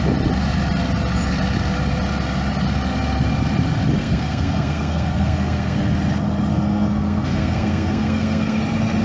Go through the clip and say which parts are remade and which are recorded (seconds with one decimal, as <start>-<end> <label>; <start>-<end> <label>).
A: 0.0-4.0 recorded; 4.0-5.8 remade; 5.8-6.5 recorded; 6.5-8.6 remade; 8.6-9.0 recorded